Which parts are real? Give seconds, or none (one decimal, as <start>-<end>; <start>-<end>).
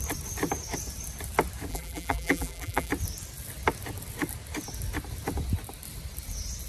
0.0-1.7; 2.9-6.7